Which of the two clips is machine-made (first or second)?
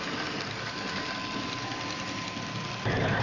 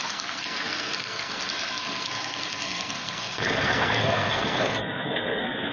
second